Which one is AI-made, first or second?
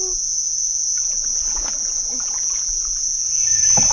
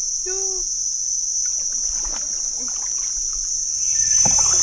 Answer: first